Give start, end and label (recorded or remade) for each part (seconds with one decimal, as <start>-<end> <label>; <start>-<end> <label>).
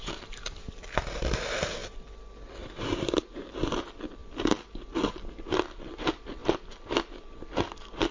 0.0-1.8 remade; 1.8-2.9 recorded; 2.9-4.2 remade; 4.2-4.9 recorded; 4.9-8.1 remade